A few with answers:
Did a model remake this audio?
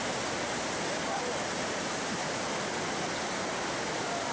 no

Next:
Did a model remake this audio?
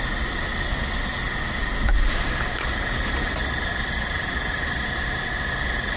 no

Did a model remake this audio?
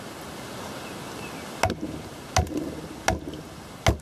no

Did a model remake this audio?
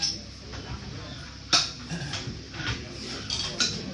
no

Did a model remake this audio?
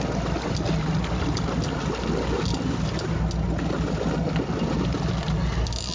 no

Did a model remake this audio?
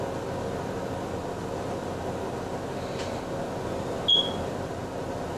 no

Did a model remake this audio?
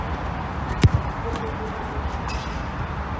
yes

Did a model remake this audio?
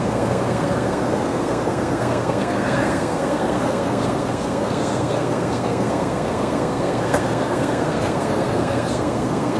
yes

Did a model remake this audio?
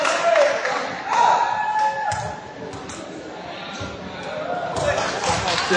no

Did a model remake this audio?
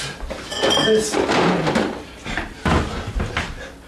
no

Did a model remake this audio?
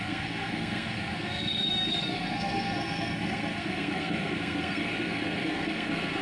yes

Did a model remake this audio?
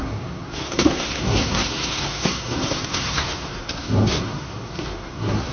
yes